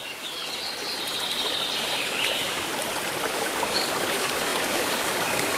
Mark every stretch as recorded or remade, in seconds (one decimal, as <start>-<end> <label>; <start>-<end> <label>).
0.0-0.4 remade; 0.4-2.0 recorded; 2.0-2.7 remade; 2.7-3.3 recorded; 3.3-5.6 remade